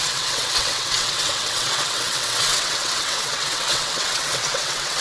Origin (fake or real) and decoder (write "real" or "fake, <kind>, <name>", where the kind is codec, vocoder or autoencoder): fake, vocoder, WaveNeXt